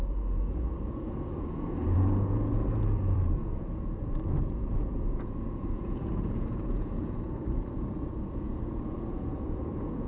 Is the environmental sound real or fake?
fake